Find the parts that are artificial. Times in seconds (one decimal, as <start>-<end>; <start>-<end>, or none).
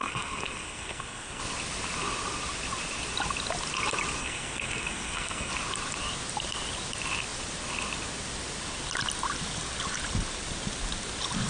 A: 0.0-1.4; 4.2-5.5